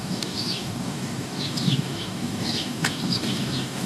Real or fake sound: fake